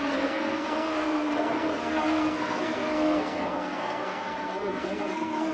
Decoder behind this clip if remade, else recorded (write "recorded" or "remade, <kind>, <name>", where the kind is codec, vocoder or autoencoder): remade, codec, SNAC